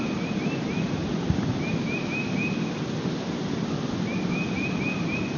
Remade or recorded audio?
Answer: recorded